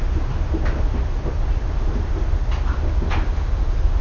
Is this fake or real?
real